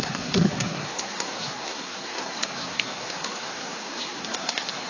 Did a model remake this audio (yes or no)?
yes